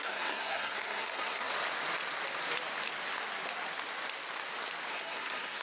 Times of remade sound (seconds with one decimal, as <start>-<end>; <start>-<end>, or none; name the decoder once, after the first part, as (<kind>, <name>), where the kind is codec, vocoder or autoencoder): 0.0-1.5 (codec, SNAC); 4.9-5.6

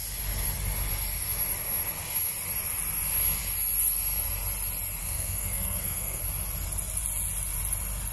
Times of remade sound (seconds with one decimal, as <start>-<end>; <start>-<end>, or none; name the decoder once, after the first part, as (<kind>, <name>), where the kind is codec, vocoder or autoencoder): 5.0-6.2 (codec, SNAC)

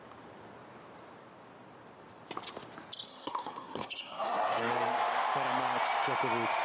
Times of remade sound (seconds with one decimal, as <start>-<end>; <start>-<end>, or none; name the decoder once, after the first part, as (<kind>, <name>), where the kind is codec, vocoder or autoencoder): 3.1-4.7 (codec, SNAC)

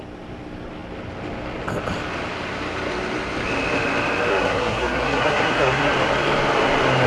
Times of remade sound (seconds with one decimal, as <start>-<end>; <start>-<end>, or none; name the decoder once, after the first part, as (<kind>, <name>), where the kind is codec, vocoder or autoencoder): 4.3-5.9 (codec, SNAC)